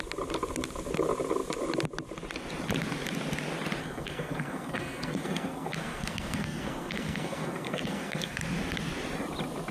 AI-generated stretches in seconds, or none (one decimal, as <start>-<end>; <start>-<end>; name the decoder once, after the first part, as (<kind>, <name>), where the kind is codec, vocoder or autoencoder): 3.8-8.4 (codec, SNAC)